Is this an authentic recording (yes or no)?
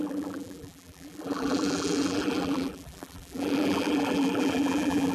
no